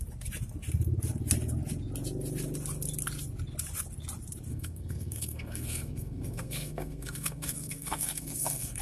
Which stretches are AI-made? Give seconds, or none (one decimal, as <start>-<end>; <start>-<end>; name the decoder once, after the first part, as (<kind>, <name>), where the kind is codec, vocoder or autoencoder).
4.5-8.8 (codec, SNAC)